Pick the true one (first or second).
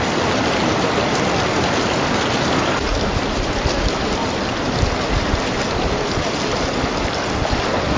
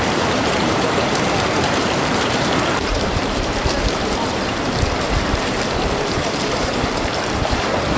first